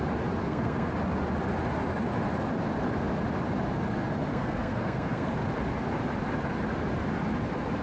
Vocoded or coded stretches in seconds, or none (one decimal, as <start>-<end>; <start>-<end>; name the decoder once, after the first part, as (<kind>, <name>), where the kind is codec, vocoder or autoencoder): 0.4-0.9 (codec, SNAC); 4.3-5.3